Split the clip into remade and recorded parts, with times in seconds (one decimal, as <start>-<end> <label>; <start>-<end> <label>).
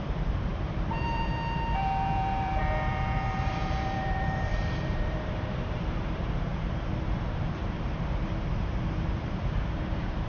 0.0-10.3 remade